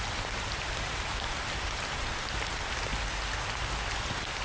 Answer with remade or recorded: recorded